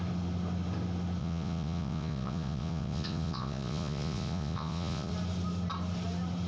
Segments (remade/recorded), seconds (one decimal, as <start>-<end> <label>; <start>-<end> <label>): 0.0-1.2 recorded; 1.2-5.1 remade; 5.1-6.5 recorded